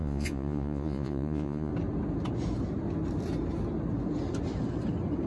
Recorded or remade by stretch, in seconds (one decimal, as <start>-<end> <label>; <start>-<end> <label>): 0.0-1.7 remade; 1.7-5.3 recorded